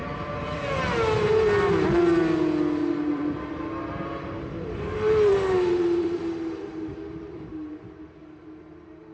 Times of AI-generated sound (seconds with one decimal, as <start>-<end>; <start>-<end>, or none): 2.8-8.1